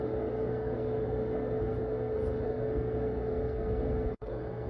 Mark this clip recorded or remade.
remade